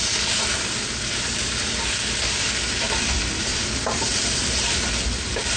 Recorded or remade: recorded